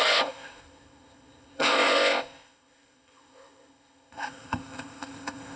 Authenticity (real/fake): fake